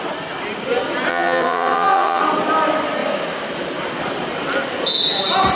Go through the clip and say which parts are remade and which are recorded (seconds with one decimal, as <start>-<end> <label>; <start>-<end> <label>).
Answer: 0.0-1.1 recorded; 1.1-2.2 remade; 2.2-5.6 recorded